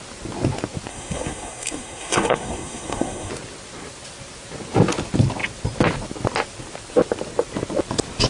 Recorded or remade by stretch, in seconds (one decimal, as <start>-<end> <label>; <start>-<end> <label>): 0.0-0.9 recorded; 0.9-3.3 remade; 3.3-8.3 recorded